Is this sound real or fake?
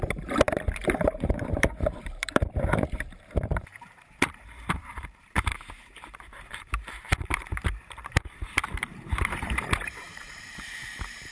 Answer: fake